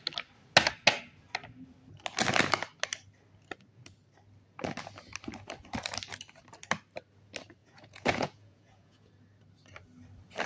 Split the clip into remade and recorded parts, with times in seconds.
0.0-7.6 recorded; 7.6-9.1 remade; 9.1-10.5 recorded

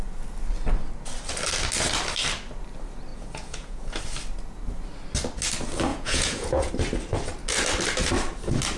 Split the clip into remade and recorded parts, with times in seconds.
0.0-3.1 recorded; 3.1-4.0 remade; 4.0-5.9 recorded; 5.9-6.7 remade; 6.7-8.8 recorded

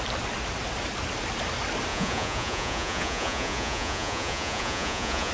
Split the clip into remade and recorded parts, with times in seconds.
0.0-1.9 recorded; 1.9-5.3 remade